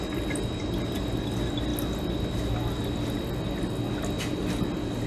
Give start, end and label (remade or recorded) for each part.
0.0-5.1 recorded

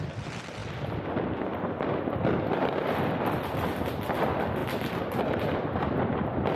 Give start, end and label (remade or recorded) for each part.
0.0-6.6 recorded

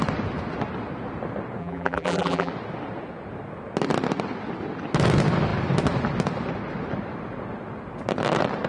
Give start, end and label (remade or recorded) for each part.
0.0-1.6 recorded; 1.6-2.5 remade; 2.5-8.7 recorded

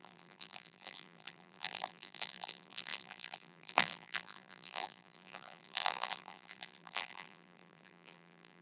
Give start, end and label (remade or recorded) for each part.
0.0-8.6 remade

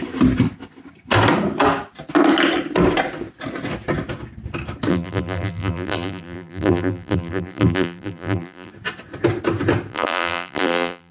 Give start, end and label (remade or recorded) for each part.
0.0-4.9 recorded; 4.9-8.7 remade; 8.7-9.9 recorded; 9.9-11.1 remade

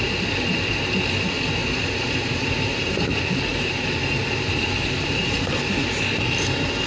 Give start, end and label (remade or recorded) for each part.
0.0-1.6 recorded; 1.6-3.1 remade; 3.1-3.5 recorded; 3.5-5.9 remade; 5.9-6.9 recorded

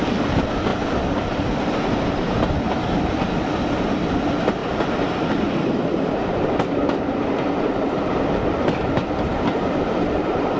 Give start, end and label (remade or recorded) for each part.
0.0-4.6 recorded; 4.6-5.8 remade; 5.8-10.6 recorded

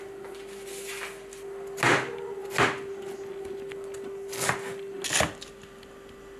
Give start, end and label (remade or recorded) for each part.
0.0-6.4 recorded